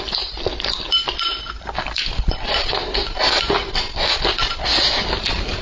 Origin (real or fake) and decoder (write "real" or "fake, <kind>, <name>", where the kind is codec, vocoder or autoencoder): real